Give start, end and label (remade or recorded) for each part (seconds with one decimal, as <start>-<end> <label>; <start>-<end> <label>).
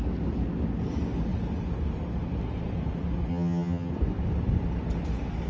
0.0-3.3 recorded; 3.3-3.9 remade; 3.9-5.5 recorded